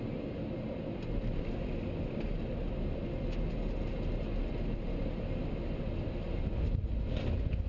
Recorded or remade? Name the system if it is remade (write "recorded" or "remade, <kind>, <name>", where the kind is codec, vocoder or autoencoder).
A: recorded